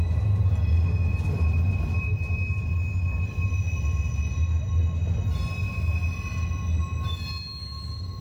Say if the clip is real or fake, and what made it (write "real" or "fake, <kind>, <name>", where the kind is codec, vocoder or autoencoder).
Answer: real